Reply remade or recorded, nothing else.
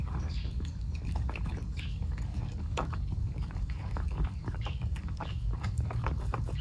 remade